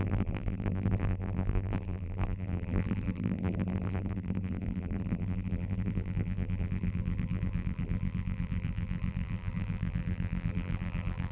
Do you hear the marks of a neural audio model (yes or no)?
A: yes